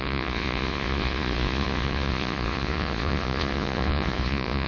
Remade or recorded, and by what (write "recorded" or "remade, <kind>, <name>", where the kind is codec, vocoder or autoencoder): remade, vocoder, Vocos